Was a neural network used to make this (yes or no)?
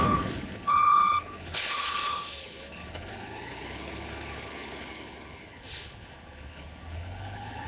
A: yes